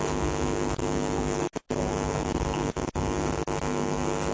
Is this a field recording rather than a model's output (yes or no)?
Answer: yes